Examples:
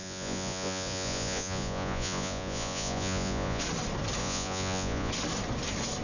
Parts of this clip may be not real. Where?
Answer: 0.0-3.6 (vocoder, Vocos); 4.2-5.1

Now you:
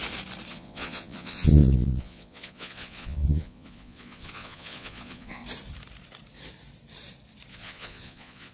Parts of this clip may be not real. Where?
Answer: 0.5-5.4 (vocoder, Vocos); 7.5-8.5